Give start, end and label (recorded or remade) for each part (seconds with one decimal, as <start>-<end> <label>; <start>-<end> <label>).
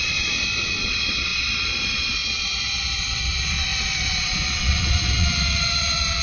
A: 0.0-6.2 remade